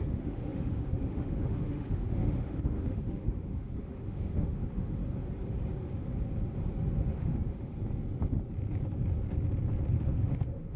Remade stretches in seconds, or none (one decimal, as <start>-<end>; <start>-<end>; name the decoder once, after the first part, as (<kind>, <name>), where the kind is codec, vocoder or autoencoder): 0.0-5.0 (autoencoder, DAC-VAE); 6.9-7.7; 10.0-10.8